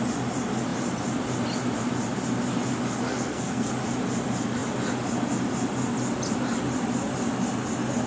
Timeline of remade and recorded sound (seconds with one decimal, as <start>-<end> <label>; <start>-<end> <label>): 0.0-3.1 recorded; 3.1-3.7 remade; 3.7-8.1 recorded